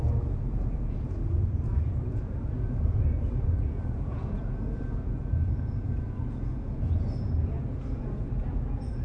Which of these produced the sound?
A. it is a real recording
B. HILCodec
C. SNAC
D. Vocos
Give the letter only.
D